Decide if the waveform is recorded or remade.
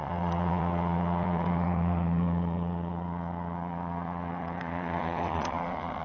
remade